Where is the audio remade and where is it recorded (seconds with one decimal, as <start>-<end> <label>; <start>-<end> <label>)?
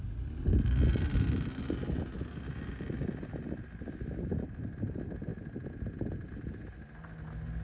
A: 0.0-7.6 recorded